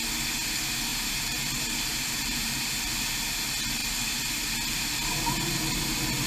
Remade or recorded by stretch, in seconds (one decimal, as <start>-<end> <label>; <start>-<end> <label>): 0.0-0.9 recorded; 0.9-2.9 remade; 2.9-3.8 recorded; 3.8-5.4 remade; 5.4-6.3 recorded